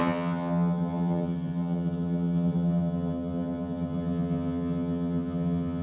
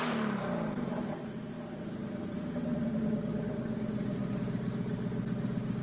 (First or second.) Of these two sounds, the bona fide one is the second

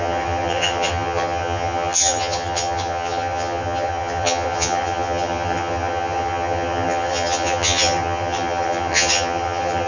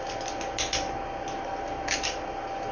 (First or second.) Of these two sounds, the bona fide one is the second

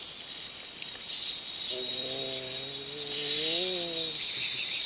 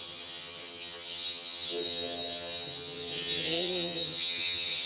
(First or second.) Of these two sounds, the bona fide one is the first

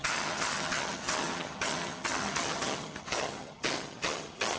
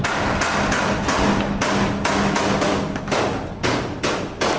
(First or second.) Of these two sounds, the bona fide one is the second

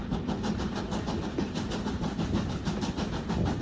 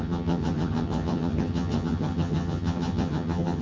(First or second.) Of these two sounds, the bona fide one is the first